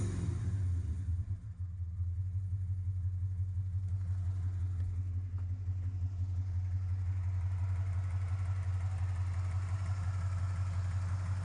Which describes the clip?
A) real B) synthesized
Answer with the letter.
A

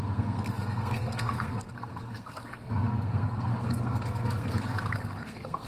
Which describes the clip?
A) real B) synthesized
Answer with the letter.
B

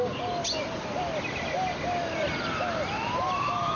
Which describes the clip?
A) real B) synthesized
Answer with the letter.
A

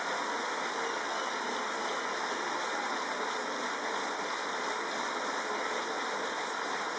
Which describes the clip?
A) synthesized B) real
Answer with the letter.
B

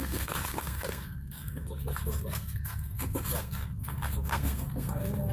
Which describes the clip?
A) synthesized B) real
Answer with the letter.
A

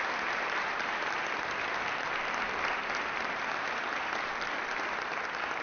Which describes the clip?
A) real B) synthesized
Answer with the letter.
A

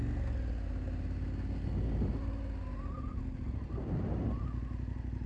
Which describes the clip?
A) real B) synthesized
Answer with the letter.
A